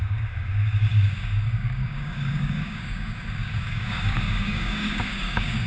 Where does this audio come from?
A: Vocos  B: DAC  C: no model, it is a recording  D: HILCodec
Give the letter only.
B